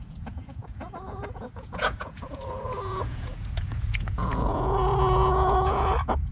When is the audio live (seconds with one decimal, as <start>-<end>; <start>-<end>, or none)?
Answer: none